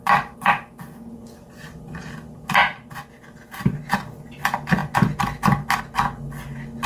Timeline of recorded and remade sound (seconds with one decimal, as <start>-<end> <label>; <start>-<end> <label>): 0.0-6.9 recorded